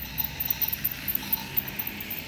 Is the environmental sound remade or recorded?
recorded